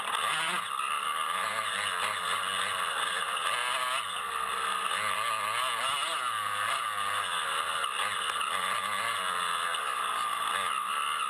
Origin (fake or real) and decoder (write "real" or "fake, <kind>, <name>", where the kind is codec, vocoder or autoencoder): real